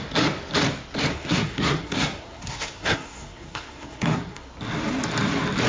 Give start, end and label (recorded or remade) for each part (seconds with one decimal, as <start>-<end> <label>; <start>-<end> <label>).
0.0-1.1 recorded; 1.1-4.5 remade; 4.5-5.7 recorded